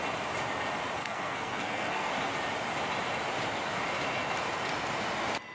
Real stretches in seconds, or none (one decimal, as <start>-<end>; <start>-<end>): 0.0-1.0; 2.1-5.5